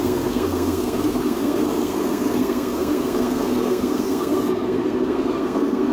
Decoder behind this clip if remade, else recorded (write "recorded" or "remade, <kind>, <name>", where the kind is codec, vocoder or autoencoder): remade, codec, SNAC